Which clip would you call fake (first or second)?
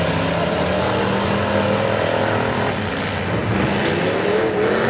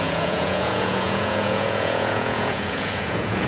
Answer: second